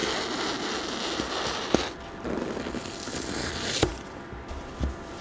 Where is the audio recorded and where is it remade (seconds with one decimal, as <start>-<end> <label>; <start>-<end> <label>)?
0.0-5.2 recorded